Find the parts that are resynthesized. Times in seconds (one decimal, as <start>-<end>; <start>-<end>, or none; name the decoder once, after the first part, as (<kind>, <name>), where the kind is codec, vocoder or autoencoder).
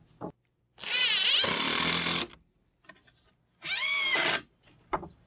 none